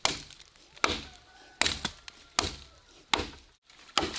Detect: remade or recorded recorded